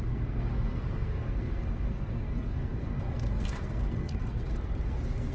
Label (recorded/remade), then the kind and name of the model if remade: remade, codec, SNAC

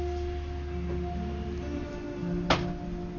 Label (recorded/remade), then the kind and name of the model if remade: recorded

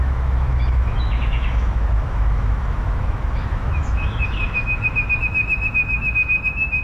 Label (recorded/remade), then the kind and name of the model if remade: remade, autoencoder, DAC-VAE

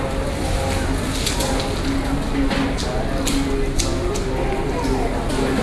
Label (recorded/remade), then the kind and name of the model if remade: recorded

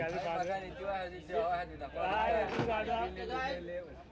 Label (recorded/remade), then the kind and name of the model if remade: recorded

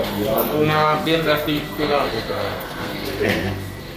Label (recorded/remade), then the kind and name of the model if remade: remade, codec, SNAC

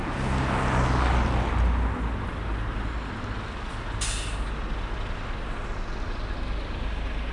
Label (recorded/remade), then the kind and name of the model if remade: recorded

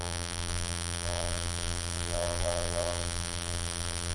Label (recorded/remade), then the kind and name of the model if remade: remade, vocoder, BigVGAN v2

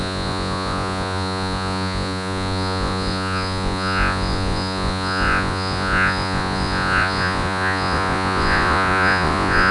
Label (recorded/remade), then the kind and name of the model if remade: remade, vocoder, Vocos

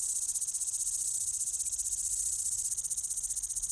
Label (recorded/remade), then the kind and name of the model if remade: recorded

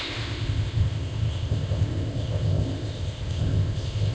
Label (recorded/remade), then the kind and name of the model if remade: remade, codec, ZipCodec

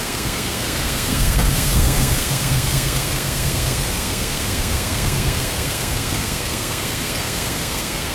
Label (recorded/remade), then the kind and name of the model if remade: remade, codec, SNAC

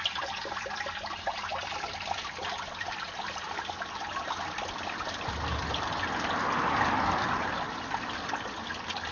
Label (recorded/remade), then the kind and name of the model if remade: remade, vocoder, BigVGAN v2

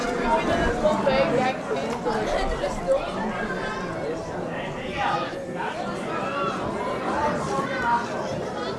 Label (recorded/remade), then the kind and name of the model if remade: recorded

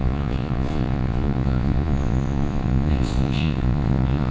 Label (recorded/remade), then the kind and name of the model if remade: remade, vocoder, Vocos